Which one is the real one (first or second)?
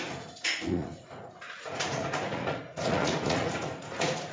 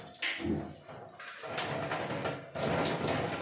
second